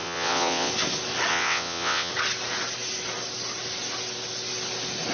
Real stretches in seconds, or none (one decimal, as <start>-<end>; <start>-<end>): 0.7-1.3; 2.1-5.1